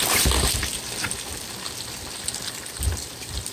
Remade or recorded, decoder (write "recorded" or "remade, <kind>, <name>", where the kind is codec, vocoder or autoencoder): recorded